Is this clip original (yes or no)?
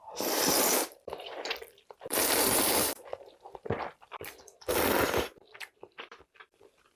no